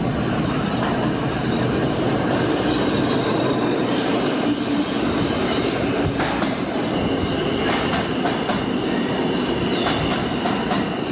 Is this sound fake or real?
real